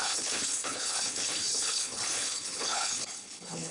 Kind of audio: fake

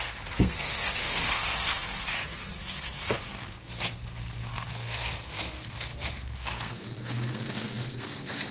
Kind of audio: fake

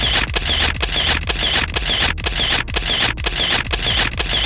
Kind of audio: real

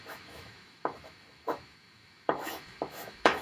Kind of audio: fake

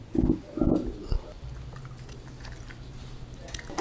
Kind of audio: real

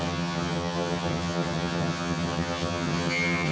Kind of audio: fake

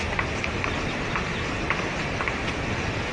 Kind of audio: real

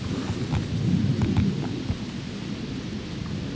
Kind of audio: real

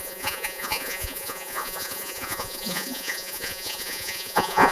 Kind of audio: fake